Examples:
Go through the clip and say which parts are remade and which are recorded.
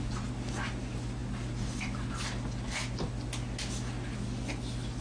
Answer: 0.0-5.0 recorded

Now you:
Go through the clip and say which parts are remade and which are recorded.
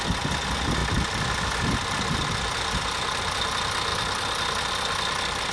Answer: 0.0-5.5 recorded